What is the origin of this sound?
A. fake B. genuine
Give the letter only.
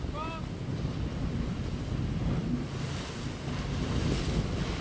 B